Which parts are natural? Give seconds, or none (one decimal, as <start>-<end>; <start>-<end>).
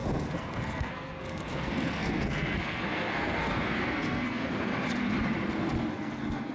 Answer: 4.7-5.9